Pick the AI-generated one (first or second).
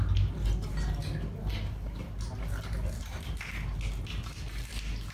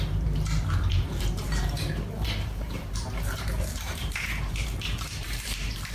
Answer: second